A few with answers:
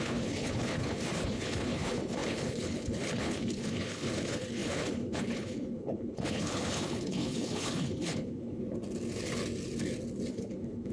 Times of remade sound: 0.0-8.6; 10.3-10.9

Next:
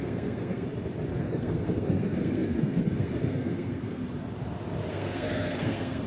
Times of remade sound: 0.0-0.7; 1.2-4.0; 4.9-6.1

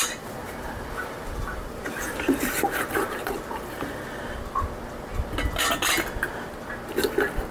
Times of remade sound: 0.4-4.2

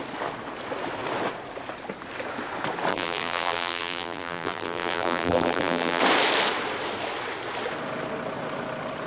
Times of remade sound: 2.9-6.0

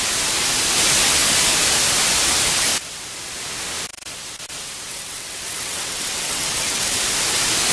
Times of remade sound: 4.9-7.0

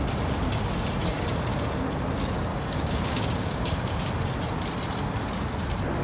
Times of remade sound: 2.5-4.1